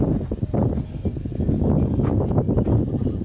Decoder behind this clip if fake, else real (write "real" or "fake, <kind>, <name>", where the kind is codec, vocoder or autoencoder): real